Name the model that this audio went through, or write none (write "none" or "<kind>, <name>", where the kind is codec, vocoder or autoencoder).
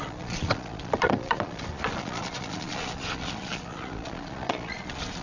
vocoder, Vocos